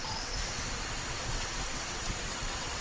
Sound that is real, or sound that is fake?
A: fake